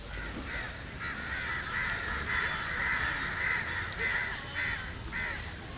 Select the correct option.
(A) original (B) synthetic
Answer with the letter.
A